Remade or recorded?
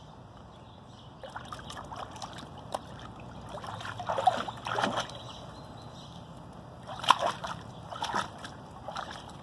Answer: recorded